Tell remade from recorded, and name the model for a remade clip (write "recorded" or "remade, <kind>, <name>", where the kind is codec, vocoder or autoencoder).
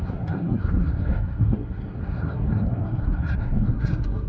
remade, codec, SNAC